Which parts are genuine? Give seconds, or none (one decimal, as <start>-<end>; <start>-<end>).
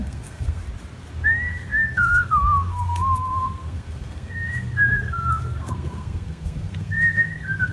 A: 0.6-1.1